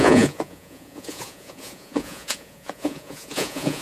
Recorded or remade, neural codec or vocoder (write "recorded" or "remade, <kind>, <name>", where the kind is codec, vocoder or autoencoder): remade, vocoder, Vocos